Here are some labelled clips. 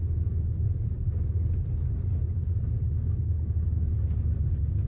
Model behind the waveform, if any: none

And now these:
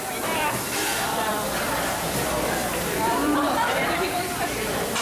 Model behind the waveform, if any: vocoder, BigVGAN v2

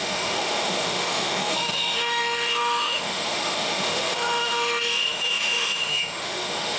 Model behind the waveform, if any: autoencoder, DAC-VAE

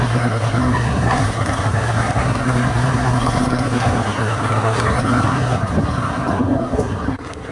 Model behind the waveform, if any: codec, SNAC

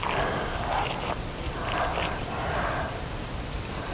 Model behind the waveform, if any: none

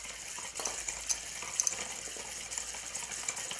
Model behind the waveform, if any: none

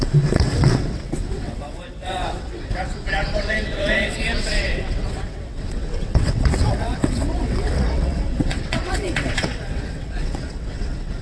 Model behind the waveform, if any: vocoder, WaveNeXt